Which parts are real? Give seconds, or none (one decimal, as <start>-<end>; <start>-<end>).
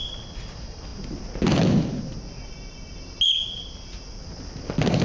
0.0-5.0